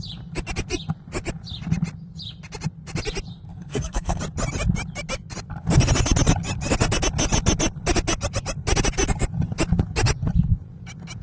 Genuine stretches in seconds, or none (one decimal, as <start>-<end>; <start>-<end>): 0.0-3.5; 4.2-11.2